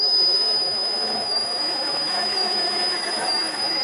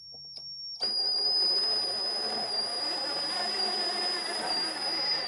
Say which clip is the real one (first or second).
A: second